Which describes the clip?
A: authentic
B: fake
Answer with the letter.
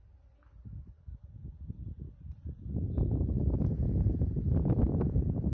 A